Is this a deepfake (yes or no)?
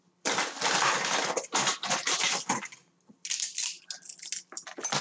no